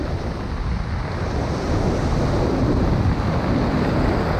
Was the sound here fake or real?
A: real